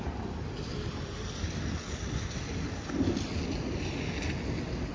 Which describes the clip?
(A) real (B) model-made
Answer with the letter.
A